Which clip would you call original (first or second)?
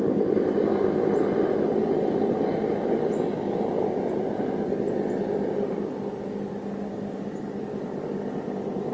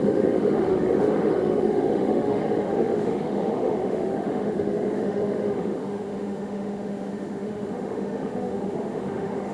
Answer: first